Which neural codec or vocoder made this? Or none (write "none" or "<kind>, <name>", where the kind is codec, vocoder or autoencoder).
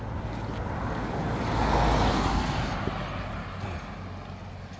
none